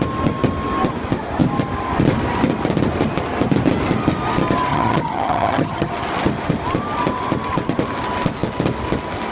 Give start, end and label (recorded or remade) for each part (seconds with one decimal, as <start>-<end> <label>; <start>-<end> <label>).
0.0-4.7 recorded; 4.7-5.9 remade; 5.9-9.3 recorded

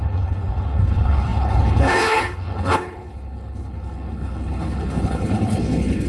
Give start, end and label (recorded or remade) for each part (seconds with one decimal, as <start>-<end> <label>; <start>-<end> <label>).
0.0-6.1 remade

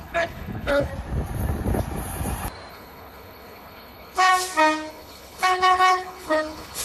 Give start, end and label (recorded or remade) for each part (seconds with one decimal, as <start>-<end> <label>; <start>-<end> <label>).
0.0-0.9 remade; 0.9-2.7 recorded; 2.7-4.3 remade; 4.3-4.9 recorded; 4.9-6.8 remade

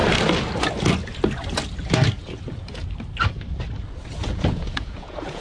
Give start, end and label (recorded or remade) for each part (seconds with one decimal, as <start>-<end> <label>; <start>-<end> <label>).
0.0-4.2 recorded; 4.2-5.4 remade

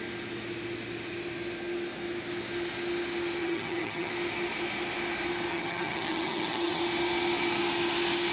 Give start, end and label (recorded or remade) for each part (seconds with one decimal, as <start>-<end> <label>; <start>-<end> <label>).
0.0-3.4 recorded; 3.4-4.1 remade; 4.1-5.5 recorded; 5.5-6.8 remade; 6.8-8.3 recorded